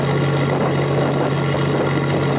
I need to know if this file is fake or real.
real